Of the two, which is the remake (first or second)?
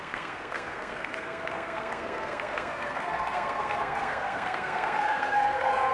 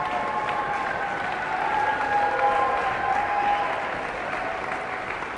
first